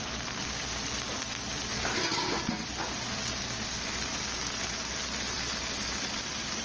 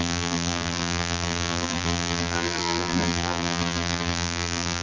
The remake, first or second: second